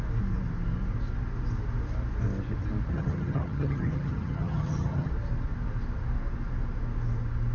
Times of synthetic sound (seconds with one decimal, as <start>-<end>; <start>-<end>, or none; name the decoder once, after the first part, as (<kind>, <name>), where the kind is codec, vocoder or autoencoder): 2.9-5.1 (vocoder, HiFi-GAN)